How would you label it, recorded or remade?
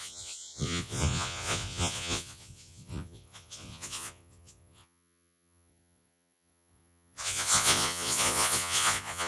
remade